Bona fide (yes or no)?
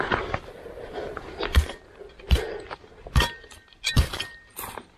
yes